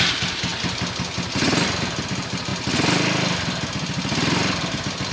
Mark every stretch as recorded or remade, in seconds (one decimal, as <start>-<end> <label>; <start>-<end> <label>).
0.0-5.1 recorded